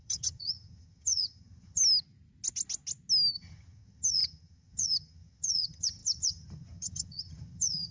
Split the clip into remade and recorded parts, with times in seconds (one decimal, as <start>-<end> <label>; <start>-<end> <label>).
0.0-1.8 remade; 1.8-3.3 recorded; 3.3-7.9 remade